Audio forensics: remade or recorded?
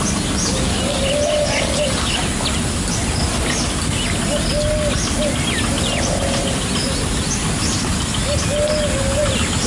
recorded